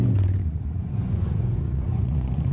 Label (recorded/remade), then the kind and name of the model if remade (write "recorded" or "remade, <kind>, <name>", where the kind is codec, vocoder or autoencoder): remade, vocoder, Vocos